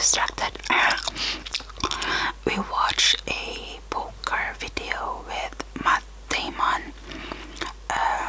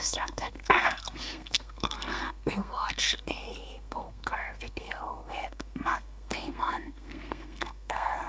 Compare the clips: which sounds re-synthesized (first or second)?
second